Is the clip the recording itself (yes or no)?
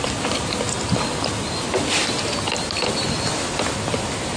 yes